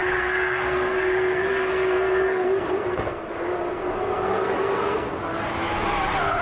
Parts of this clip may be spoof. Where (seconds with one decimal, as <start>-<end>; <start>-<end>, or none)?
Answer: 0.0-3.3; 3.7-5.2